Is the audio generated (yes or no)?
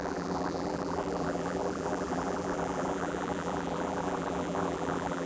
yes